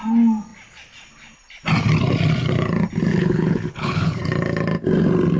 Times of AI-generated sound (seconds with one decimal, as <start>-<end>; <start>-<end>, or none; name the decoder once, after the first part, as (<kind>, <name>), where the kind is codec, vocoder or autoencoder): 3.1-4.2 (codec, HILCodec)